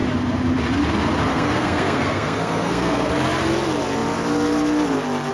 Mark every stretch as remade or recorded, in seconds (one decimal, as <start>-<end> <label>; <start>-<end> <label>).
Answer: 0.0-1.3 recorded; 1.3-3.1 remade; 3.1-5.3 recorded